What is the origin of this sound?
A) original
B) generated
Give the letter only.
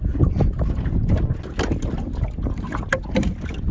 A